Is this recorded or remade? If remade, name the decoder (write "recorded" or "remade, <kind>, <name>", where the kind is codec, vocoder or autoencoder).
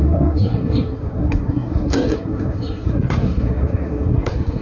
remade, codec, SNAC